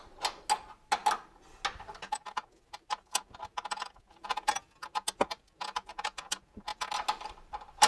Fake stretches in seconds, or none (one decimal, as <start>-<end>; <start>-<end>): none